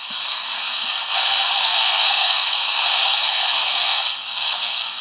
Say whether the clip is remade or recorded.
remade